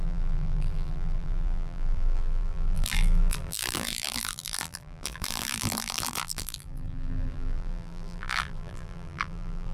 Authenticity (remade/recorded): remade